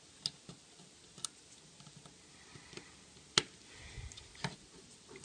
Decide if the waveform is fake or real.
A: real